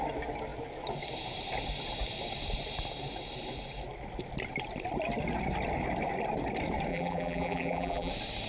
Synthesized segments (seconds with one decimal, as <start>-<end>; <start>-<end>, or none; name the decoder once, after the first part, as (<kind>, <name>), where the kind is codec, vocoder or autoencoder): 6.9-8.1 (vocoder, BigVGAN v2)

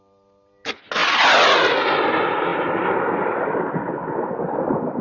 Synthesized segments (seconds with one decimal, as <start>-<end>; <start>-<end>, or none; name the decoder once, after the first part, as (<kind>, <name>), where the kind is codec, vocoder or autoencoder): none